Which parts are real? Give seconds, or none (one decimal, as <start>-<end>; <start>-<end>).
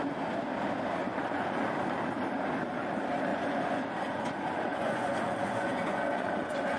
0.0-1.0; 1.6-3.3